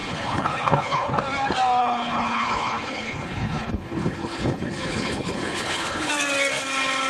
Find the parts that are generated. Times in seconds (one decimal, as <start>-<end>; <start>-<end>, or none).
0.0-1.1; 1.8-6.1